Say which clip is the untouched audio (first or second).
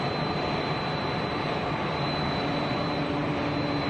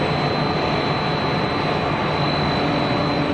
second